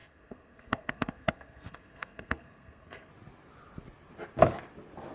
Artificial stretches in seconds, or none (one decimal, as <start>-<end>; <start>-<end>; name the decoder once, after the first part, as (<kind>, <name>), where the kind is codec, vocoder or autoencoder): 0.0-3.1 (codec, SNAC)